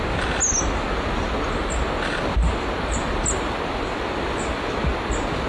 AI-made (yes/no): no